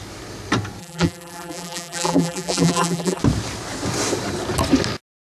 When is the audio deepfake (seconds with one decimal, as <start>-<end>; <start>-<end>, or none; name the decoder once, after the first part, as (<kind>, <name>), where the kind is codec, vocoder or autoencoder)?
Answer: 0.8-3.2 (vocoder, BigVGAN v2)